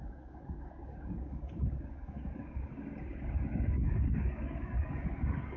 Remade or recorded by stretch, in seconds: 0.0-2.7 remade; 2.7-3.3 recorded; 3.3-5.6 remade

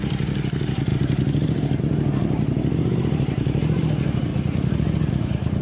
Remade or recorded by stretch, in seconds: 0.0-4.3 remade; 4.3-5.1 recorded; 5.1-5.6 remade

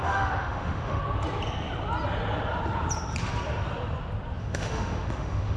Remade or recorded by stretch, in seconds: 0.0-1.0 remade; 1.0-4.4 recorded; 4.4-5.6 remade

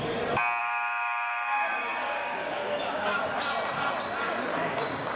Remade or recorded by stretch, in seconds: 0.0-0.6 recorded; 0.6-3.2 remade; 3.2-4.5 recorded; 4.5-5.2 remade

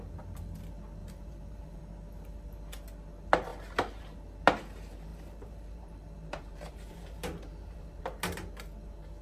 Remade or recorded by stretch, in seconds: 0.0-1.0 recorded; 1.0-1.8 remade; 1.8-5.1 recorded; 5.1-8.0 remade; 8.0-9.2 recorded

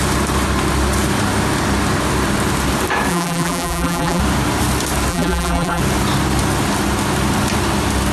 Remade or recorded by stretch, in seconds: 0.0-3.1 recorded; 3.1-4.2 remade; 4.2-5.1 recorded; 5.1-5.8 remade; 5.8-8.1 recorded

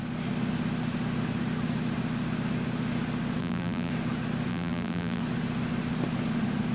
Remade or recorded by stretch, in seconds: 0.0-3.4 recorded; 3.4-3.9 remade; 3.9-4.5 recorded; 4.5-5.2 remade; 5.2-6.7 recorded